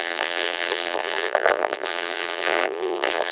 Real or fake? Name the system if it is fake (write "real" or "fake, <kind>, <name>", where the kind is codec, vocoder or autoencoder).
fake, vocoder, BigVGAN v2